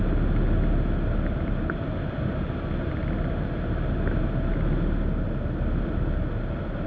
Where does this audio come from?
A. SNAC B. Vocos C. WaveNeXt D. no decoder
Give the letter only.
D